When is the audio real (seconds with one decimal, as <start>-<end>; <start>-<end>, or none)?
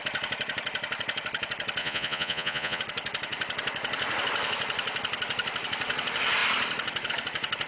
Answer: 0.0-1.8; 2.8-7.7